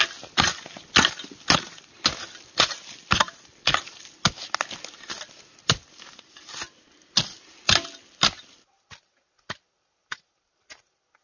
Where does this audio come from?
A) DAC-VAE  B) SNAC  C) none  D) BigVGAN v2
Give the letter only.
C